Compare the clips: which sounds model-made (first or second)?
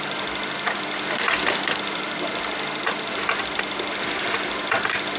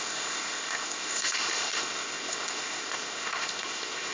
second